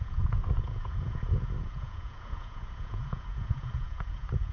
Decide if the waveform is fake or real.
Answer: fake